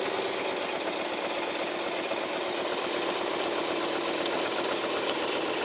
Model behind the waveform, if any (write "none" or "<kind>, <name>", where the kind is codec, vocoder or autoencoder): none